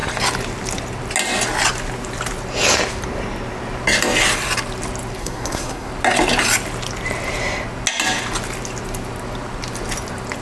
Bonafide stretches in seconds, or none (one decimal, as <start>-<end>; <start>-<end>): 0.0-5.2; 5.9-10.4